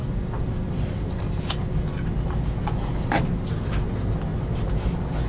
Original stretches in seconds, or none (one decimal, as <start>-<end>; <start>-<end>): 0.0-5.3